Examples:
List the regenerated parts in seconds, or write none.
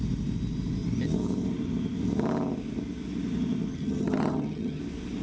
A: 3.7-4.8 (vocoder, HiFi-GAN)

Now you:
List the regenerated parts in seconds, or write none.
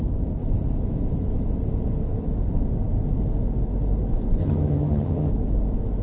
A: 4.4-5.3 (vocoder, HiFi-GAN)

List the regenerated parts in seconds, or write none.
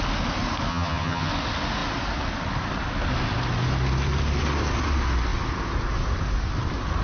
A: 0.7-1.3 (vocoder, HiFi-GAN)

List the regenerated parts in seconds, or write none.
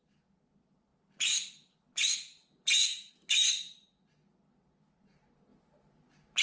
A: none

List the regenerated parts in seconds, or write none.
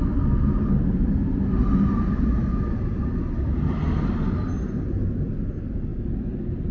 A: none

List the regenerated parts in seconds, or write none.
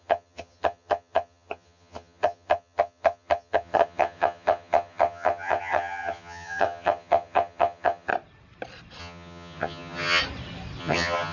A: 0.0-8.1 (vocoder, HiFi-GAN); 9.0-10.2; 10.8-11.3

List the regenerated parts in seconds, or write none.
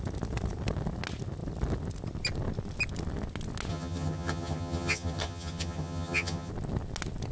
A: 3.7-6.5 (vocoder, HiFi-GAN)